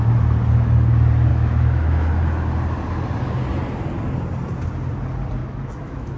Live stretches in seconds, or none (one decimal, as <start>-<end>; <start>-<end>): 0.0-1.3; 2.2-5.4